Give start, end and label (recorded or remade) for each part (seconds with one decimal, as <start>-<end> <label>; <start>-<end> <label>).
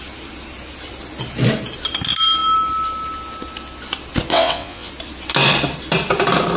0.0-4.3 recorded; 4.3-4.9 remade; 4.9-6.6 recorded